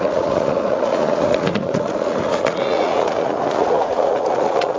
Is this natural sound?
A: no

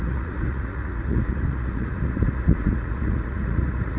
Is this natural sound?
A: no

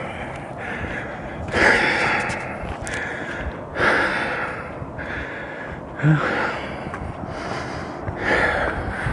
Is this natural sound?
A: yes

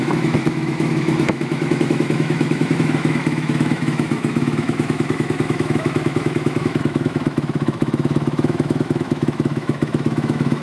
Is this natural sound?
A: no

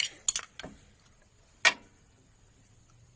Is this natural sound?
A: yes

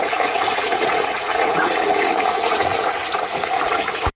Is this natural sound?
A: no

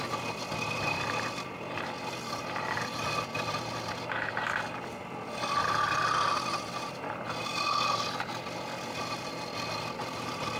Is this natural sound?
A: yes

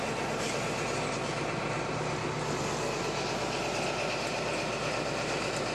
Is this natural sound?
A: yes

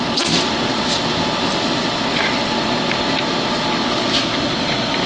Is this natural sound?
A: yes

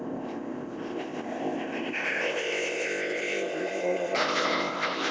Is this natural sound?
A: no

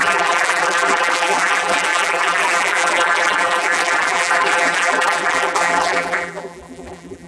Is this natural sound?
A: no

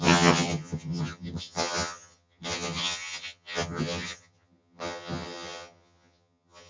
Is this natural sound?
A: no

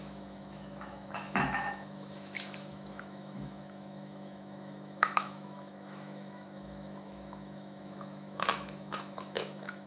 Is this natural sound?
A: no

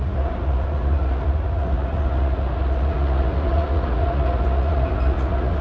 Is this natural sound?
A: no